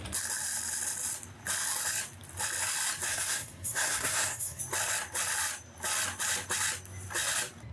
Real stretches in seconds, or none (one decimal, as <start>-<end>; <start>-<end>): 0.0-3.1; 4.6-7.7